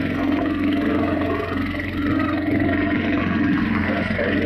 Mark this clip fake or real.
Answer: fake